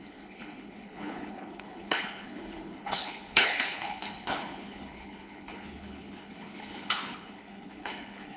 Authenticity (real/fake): fake